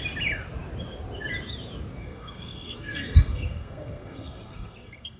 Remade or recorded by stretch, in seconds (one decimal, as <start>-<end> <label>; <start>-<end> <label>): 0.0-2.0 recorded; 2.0-5.2 remade